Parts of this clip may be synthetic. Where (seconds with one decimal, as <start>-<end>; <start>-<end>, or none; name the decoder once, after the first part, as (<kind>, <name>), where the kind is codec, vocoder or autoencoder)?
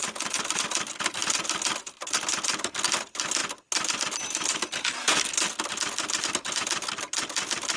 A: none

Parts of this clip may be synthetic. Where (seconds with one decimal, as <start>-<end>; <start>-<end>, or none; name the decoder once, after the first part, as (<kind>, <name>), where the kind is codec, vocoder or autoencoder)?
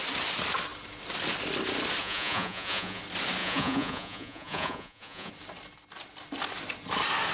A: 2.0-3.0 (vocoder, Vocos); 3.4-5.3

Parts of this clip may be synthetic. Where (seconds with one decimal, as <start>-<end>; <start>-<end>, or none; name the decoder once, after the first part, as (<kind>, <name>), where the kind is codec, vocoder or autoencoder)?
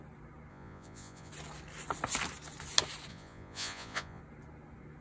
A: 0.5-1.3 (vocoder, Vocos); 3.1-4.2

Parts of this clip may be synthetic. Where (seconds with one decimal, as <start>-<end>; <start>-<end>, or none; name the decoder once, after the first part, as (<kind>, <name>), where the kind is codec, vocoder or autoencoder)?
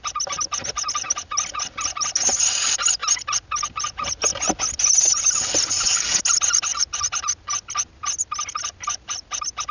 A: none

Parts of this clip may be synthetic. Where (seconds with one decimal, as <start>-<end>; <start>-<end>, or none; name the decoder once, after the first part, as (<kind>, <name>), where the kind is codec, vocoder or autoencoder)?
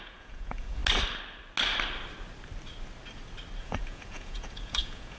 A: 0.0-0.8 (vocoder, Vocos); 3.6-5.2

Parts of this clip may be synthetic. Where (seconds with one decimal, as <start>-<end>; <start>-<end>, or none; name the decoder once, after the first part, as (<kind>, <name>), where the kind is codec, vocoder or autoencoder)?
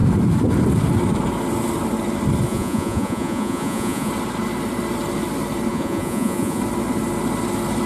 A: 2.5-4.1 (vocoder, Vocos); 5.7-6.6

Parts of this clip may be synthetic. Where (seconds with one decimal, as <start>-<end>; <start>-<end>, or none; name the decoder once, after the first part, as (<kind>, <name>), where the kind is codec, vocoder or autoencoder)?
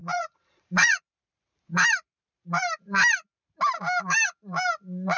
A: 0.0-1.0 (vocoder, Vocos)